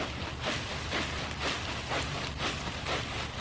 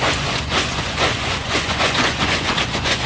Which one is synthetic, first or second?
second